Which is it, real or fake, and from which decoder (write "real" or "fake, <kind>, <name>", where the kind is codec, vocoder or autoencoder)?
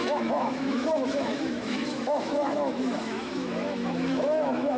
fake, autoencoder, DAC-VAE